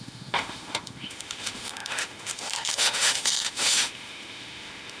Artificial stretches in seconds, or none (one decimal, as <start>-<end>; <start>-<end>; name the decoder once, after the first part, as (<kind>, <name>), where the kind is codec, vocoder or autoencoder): 0.0-5.0 (autoencoder, DAC-VAE)